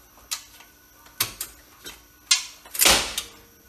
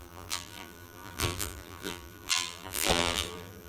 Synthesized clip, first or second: second